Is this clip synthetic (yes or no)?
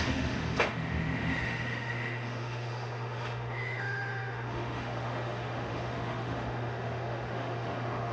yes